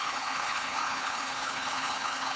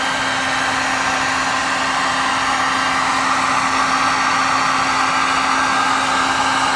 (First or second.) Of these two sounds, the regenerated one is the first